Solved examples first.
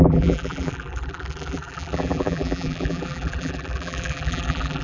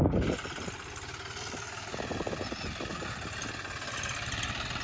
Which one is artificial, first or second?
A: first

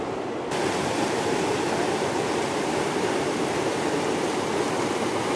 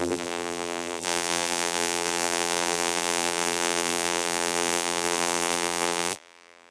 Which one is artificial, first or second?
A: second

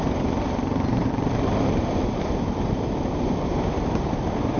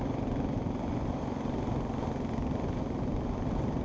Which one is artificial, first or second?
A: first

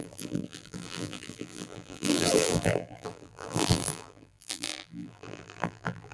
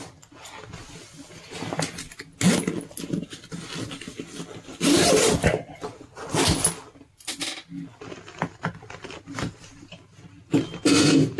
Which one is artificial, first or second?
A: first